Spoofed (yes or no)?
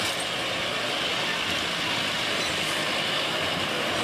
no